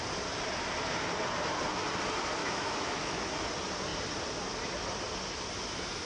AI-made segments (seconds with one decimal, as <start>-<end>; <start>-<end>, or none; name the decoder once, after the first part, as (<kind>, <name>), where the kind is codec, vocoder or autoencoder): 2.4-3.3 (autoencoder, DAC-VAE)